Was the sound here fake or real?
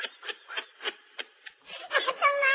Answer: fake